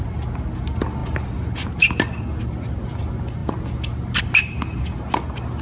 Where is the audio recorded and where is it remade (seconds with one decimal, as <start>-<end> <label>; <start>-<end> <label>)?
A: 0.0-5.6 recorded